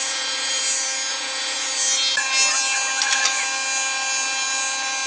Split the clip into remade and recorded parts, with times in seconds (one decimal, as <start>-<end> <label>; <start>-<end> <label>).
0.0-0.6 remade; 0.6-1.1 recorded; 1.1-1.7 remade; 1.7-5.1 recorded

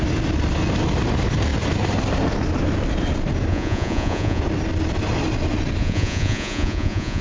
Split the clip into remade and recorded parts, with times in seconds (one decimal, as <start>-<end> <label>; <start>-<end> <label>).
0.0-3.5 recorded; 3.5-4.4 remade; 4.4-5.8 recorded; 5.8-7.2 remade

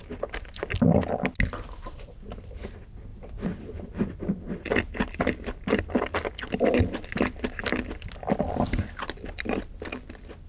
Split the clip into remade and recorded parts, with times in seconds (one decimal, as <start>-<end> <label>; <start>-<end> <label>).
0.0-10.5 recorded

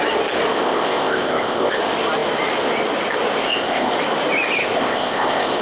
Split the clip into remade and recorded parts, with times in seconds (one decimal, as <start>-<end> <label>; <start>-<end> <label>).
0.0-0.5 recorded; 0.5-1.8 remade; 1.8-3.4 recorded; 3.4-3.9 remade; 3.9-4.6 recorded; 4.6-5.6 remade

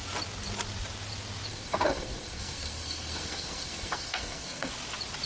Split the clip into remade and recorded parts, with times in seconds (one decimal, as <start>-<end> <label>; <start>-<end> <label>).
0.0-1.5 recorded; 1.5-4.7 remade; 4.7-5.3 recorded